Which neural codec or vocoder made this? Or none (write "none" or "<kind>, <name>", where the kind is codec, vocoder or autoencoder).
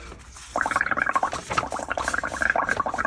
none